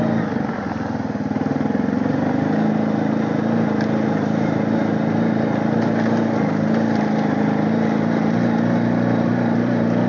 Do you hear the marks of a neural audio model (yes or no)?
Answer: no